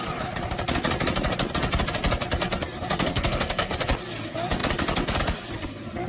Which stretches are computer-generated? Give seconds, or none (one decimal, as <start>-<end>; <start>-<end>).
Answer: 3.1-3.7